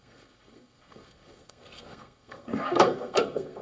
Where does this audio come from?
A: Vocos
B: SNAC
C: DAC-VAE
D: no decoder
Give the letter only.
B